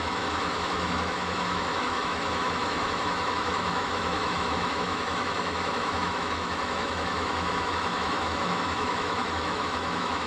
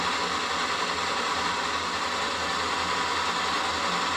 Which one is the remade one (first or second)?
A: first